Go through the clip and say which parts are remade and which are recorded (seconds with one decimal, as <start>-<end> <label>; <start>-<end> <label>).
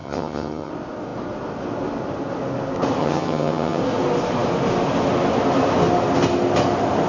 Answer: 0.0-0.7 remade; 0.7-3.0 recorded; 3.0-3.8 remade; 3.8-7.1 recorded